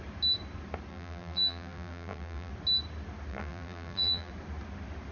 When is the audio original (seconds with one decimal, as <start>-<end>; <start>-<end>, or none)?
0.0-0.9; 2.5-3.3; 4.3-5.1